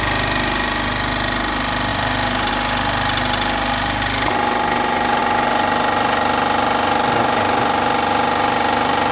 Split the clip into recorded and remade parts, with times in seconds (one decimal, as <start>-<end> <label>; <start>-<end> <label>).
0.0-1.9 recorded; 1.9-2.5 remade; 2.5-9.1 recorded